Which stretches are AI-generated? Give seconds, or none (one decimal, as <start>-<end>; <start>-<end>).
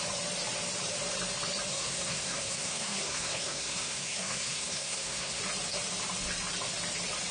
1.7-5.4